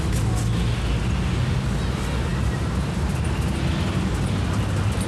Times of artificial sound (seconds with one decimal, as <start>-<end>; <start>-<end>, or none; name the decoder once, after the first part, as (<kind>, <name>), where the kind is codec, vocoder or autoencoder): none